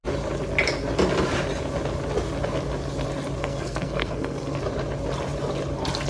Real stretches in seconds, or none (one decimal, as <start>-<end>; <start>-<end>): 0.0-3.4; 4.6-6.1